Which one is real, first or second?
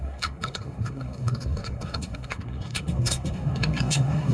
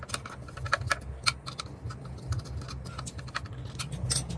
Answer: second